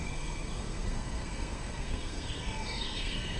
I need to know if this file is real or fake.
fake